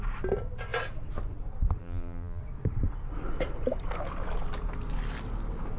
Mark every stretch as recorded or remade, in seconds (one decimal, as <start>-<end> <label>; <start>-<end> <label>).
0.0-1.8 recorded; 1.8-2.4 remade; 2.4-5.8 recorded